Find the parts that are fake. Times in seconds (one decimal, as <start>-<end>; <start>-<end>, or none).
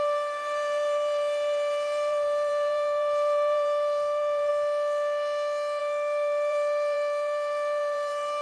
0.0-4.5; 5.8-8.4